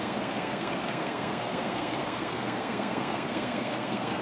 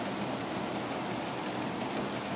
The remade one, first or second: first